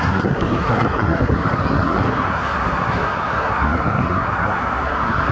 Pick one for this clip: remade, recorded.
remade